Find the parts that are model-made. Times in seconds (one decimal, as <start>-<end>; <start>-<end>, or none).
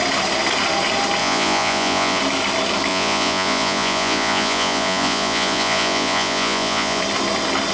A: 1.2-2.2; 2.9-7.0